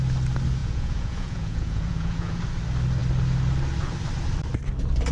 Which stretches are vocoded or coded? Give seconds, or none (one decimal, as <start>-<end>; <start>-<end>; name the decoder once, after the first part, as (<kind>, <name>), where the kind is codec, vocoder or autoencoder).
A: 0.6-2.4 (vocoder, Vocos)